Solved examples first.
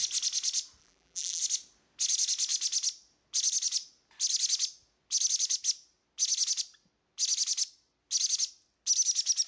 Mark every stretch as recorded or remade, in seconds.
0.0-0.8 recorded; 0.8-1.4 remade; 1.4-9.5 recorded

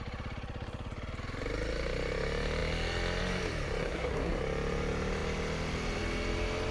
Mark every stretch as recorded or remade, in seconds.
0.0-3.8 recorded; 3.8-4.4 remade; 4.4-6.7 recorded